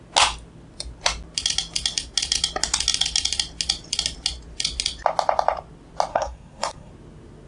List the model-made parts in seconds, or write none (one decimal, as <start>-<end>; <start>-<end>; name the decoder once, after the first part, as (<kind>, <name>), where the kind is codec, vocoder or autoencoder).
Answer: 6.1-6.9 (codec, SNAC)